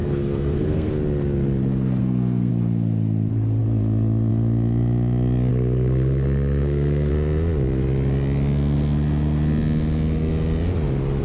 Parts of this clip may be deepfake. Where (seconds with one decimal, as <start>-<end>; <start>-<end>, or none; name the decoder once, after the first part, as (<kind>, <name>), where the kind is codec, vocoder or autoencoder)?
0.0-0.9 (codec, SNAC); 2.0-2.5; 5.5-7.1